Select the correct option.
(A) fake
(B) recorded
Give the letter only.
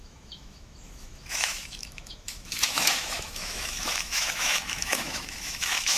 A